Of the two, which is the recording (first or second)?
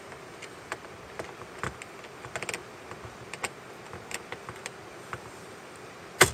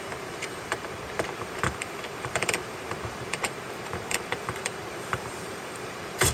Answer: first